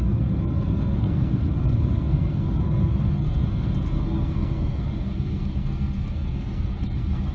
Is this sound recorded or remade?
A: remade